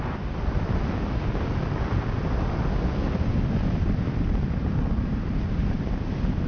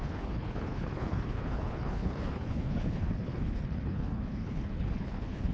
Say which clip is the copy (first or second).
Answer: second